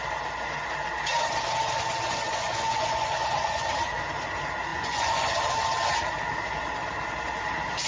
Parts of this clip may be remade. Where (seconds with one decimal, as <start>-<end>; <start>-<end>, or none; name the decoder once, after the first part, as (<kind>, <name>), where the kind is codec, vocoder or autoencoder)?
2.3-3.7 (vocoder, Vocos); 4.7-5.3